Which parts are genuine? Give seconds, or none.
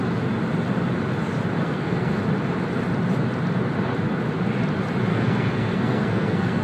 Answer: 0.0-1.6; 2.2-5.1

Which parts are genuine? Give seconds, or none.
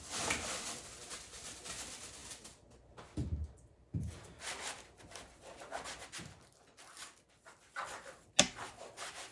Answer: 0.0-9.3